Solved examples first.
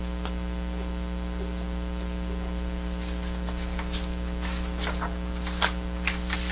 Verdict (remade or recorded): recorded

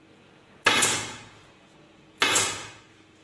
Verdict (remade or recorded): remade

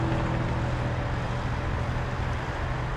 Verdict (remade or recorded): recorded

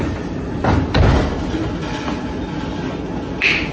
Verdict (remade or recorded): recorded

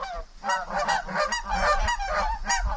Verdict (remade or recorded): recorded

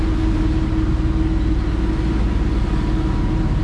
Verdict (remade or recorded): recorded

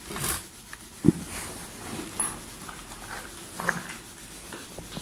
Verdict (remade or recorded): recorded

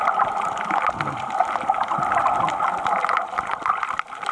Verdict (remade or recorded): recorded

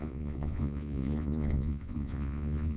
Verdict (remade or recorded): remade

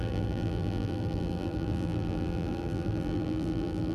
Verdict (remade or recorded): remade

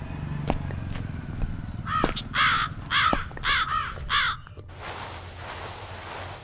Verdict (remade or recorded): recorded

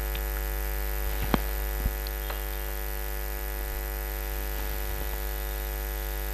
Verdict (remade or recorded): recorded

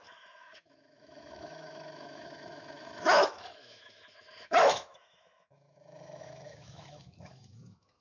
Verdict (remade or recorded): remade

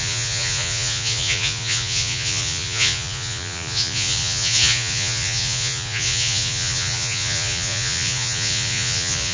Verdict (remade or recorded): remade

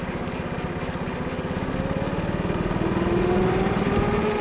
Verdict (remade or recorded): recorded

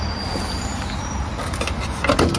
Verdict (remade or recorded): recorded